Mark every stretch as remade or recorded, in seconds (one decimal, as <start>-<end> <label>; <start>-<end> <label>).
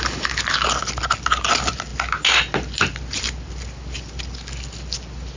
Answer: 0.0-5.4 recorded